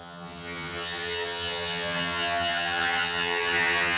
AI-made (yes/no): yes